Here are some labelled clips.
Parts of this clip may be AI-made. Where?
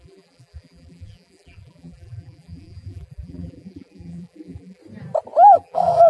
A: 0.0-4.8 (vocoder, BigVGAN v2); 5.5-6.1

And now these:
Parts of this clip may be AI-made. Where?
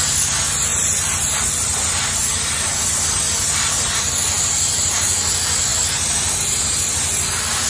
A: 0.7-1.5 (vocoder, BigVGAN v2)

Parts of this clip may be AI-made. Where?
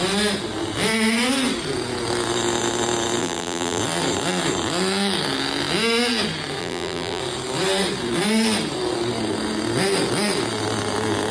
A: 3.2-3.8 (vocoder, BigVGAN v2); 6.6-7.2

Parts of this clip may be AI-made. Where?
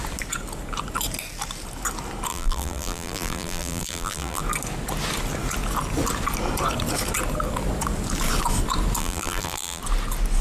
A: 2.3-4.4 (vocoder, BigVGAN v2); 9.0-9.8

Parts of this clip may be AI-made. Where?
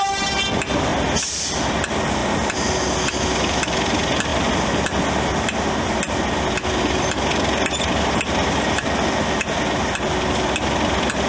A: none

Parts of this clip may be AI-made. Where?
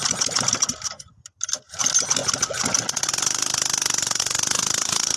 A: 0.0-5.2 (vocoder, BigVGAN v2)